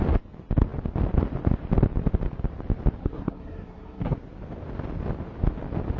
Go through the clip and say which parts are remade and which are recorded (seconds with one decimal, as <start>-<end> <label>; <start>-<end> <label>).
0.0-3.0 recorded; 3.0-4.2 remade; 4.2-6.0 recorded